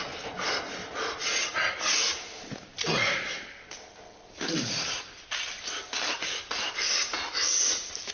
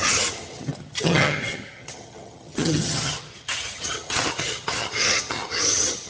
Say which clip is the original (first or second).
first